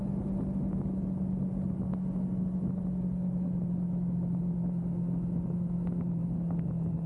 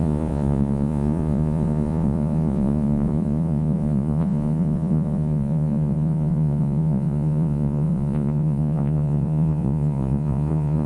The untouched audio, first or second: first